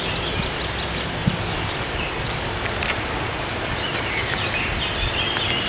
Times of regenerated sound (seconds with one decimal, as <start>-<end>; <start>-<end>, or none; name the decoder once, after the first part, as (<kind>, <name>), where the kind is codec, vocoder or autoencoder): 1.2-4.6 (vocoder, BigVGAN v2)